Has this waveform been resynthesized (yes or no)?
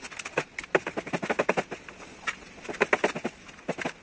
no